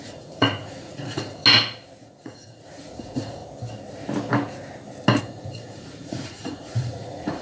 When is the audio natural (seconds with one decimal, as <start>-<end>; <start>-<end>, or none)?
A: 1.4-2.0; 3.4-5.2